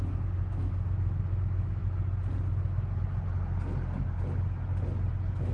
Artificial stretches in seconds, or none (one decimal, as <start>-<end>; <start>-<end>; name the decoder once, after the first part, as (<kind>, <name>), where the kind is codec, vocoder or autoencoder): 0.0-1.8 (autoencoder, DAC-VAE); 5.1-5.5